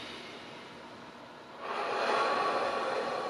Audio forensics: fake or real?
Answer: real